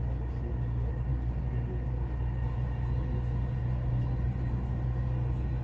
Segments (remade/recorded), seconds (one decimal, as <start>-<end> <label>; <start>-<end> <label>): 0.0-5.6 recorded